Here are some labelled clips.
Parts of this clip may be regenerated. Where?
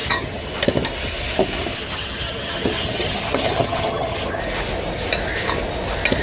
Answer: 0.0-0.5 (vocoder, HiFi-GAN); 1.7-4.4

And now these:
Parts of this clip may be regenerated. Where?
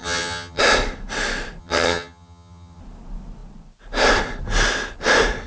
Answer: 0.0-0.6 (vocoder, HiFi-GAN); 1.6-2.8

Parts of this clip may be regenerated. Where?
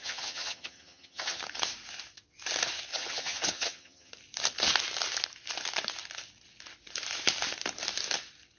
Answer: 0.0-1.4 (vocoder, HiFi-GAN); 2.9-4.1